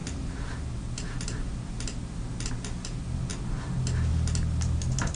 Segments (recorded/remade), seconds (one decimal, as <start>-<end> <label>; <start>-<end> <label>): 0.0-5.2 recorded